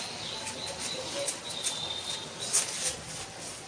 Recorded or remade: recorded